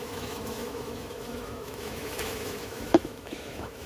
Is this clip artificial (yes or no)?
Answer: yes